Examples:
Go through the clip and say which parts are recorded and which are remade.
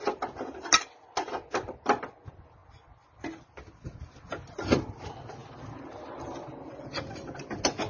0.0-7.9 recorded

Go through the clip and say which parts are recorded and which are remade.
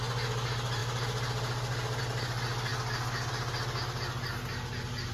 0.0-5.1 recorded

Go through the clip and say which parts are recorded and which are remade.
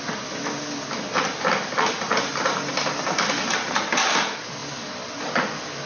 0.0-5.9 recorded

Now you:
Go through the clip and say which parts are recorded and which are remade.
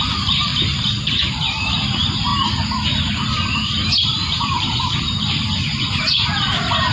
0.0-0.5 remade; 0.5-1.0 recorded; 1.0-2.3 remade; 2.3-4.3 recorded; 4.3-6.9 remade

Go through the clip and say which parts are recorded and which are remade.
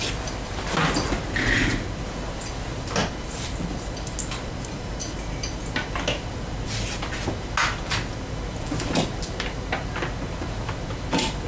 0.0-11.5 recorded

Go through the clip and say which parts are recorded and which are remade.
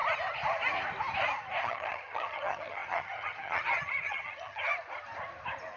0.0-1.6 recorded; 1.6-4.7 remade; 4.7-5.8 recorded